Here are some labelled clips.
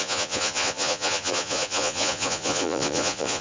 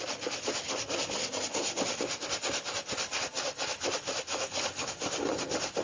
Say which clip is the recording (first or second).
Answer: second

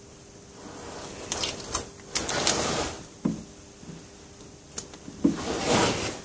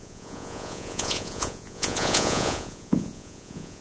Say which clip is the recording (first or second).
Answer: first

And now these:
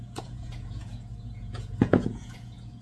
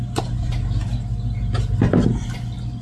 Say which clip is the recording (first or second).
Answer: second